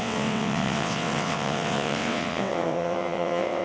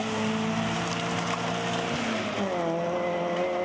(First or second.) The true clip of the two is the second